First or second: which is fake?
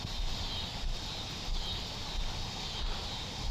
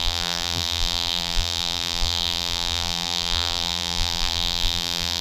second